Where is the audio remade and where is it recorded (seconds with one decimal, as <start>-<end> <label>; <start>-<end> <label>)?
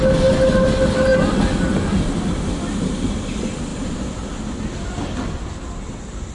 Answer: 0.0-6.3 recorded